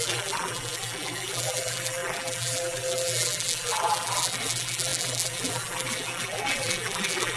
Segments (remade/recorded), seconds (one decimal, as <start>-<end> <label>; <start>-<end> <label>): 0.0-7.4 remade